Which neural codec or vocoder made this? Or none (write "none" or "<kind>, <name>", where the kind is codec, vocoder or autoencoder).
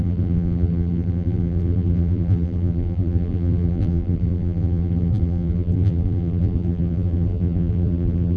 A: vocoder, BigVGAN v2